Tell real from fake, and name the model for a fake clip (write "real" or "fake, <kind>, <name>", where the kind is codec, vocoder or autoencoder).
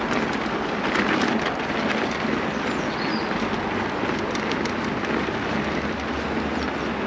real